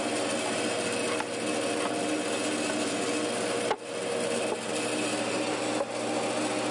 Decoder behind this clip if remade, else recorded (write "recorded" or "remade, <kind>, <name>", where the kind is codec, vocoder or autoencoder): recorded